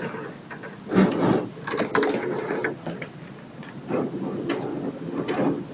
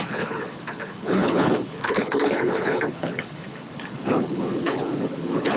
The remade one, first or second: second